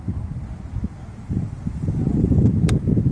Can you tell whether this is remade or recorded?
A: recorded